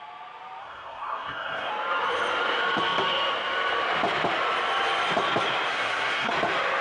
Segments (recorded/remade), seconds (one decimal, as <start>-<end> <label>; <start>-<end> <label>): 0.0-0.6 recorded; 0.6-1.7 remade; 1.7-5.7 recorded; 5.7-6.3 remade; 6.3-6.8 recorded